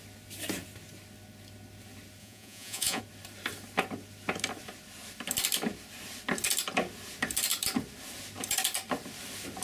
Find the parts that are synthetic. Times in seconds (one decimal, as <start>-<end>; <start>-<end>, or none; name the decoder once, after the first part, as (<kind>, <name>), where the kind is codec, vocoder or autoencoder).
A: 2.2-3.0 (vocoder, Vocos)